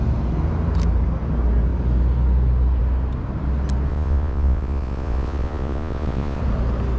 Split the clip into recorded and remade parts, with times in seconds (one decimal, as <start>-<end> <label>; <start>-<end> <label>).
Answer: 0.0-3.9 recorded; 3.9-6.4 remade; 6.4-7.0 recorded